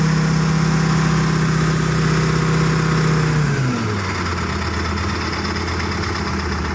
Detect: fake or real real